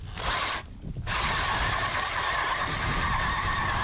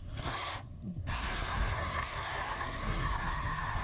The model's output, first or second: second